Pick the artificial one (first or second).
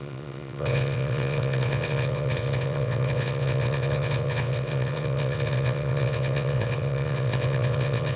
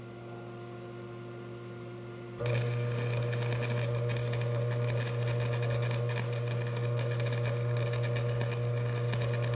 first